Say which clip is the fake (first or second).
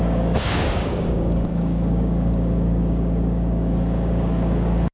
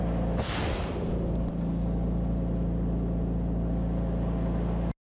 first